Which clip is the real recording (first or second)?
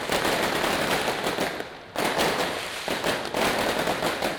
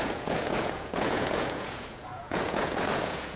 first